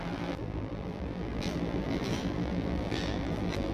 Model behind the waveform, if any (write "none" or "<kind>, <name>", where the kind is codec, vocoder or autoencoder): vocoder, BigVGAN v2